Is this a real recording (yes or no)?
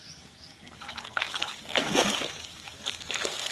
no